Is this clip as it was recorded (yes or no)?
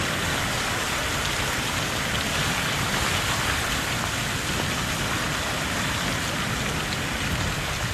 yes